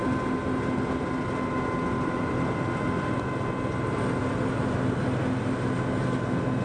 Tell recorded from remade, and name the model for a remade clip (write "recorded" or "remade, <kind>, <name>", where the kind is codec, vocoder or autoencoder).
recorded